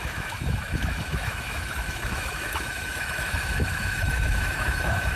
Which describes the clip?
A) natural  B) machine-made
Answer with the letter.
B